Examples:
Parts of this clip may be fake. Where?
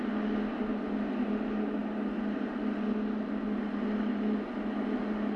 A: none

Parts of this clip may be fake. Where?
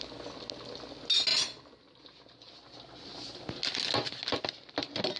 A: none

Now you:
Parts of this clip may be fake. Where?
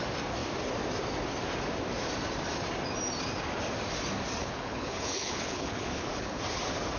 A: 4.4-6.4 (codec, HILCodec)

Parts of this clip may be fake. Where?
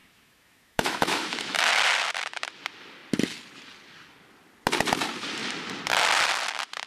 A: 0.0-1.7 (autoencoder, DAC-VAE)